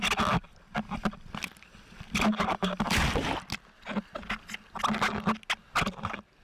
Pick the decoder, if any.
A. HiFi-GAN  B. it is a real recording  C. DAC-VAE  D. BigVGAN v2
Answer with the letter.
B